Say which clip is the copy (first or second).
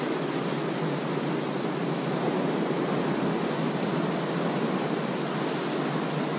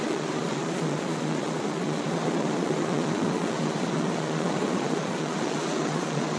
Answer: second